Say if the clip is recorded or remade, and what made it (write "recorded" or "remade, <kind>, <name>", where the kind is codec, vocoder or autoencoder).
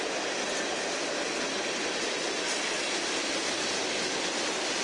recorded